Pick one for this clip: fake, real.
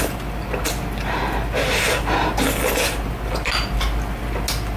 real